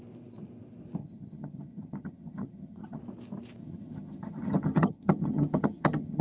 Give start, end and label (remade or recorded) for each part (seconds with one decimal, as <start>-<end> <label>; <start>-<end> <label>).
0.0-1.0 recorded; 1.0-3.0 remade; 3.0-3.6 recorded; 3.6-6.2 remade